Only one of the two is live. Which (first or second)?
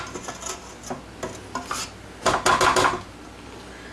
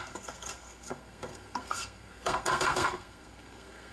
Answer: first